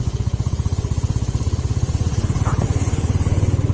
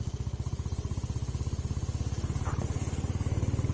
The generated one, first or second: first